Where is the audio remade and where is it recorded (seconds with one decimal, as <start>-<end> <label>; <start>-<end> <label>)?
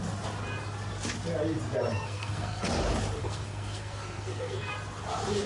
0.0-1.9 recorded; 1.9-2.7 remade; 2.7-3.2 recorded; 3.2-4.7 remade; 4.7-5.5 recorded